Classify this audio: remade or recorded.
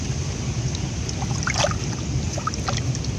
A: recorded